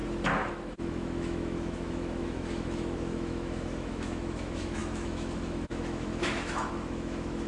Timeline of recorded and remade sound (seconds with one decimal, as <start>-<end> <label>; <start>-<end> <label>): 0.0-0.5 recorded; 0.5-7.5 remade

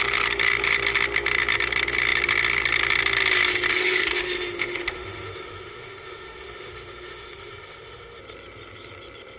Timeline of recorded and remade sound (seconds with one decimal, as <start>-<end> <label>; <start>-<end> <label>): 0.0-3.7 recorded; 3.7-8.2 remade; 8.2-9.4 recorded

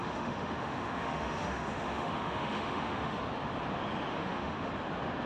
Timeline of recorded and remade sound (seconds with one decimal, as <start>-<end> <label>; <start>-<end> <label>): 0.0-3.2 remade; 3.2-4.1 recorded; 4.1-4.7 remade; 4.7-5.3 recorded

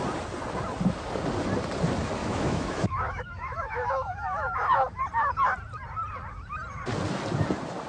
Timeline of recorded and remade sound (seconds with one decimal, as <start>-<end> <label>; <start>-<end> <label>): 0.0-2.2 recorded; 2.2-5.0 remade; 5.0-7.9 recorded